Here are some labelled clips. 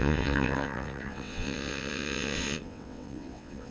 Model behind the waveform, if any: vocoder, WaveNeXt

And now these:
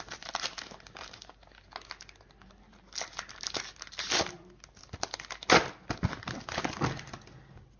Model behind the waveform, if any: none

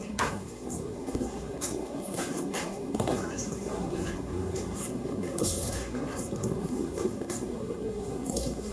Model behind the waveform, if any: codec, SNAC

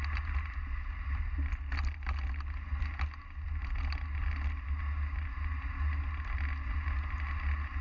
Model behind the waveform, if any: none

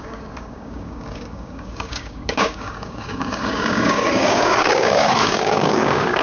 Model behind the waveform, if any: codec, DAC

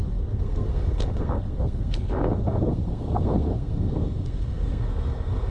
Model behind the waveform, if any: codec, SNAC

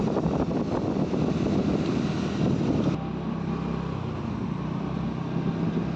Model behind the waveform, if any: none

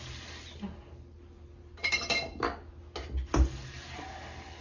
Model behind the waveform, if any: none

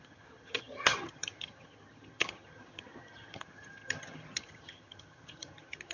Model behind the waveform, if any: vocoder, HiFi-GAN